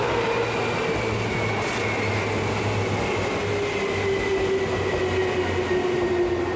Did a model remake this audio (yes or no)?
no